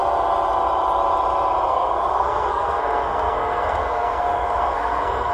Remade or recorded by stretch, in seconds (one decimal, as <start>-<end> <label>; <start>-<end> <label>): 0.0-1.7 recorded; 1.7-5.3 remade